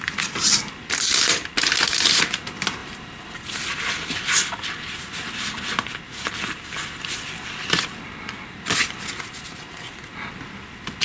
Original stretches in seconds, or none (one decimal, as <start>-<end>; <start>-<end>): 0.0-11.0